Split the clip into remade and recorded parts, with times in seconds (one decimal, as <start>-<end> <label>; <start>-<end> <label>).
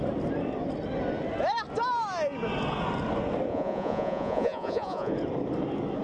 0.0-3.5 recorded; 3.5-5.1 remade; 5.1-6.0 recorded